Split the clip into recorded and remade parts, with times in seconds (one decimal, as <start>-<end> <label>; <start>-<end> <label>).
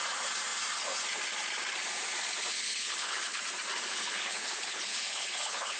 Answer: 0.0-2.5 recorded; 2.5-3.4 remade; 3.4-3.9 recorded; 3.9-5.8 remade